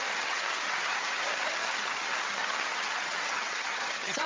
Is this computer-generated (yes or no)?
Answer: yes